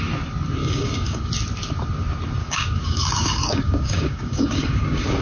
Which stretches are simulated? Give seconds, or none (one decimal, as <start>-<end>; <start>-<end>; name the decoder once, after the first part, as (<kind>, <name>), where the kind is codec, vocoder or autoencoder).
0.6-1.3 (codec, DAC); 2.4-5.2